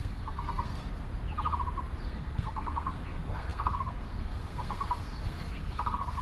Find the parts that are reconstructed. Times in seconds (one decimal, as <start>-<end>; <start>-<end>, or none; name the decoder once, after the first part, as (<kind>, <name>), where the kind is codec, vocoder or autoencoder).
0.0-1.1 (codec, SNAC); 2.0-6.2